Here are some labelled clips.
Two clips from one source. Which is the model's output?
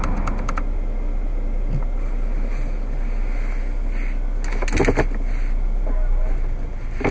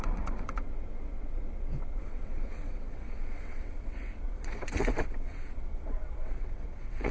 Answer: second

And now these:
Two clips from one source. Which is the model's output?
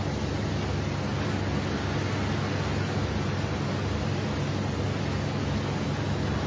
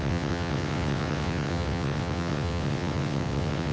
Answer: second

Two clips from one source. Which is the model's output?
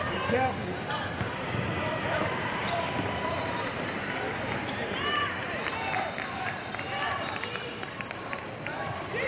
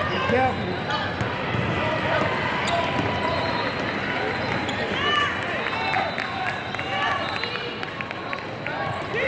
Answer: first